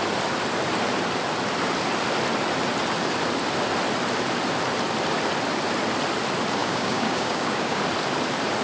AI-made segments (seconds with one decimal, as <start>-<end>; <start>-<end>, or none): 6.6-7.8